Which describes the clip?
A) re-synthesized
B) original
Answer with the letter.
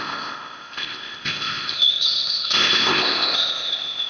A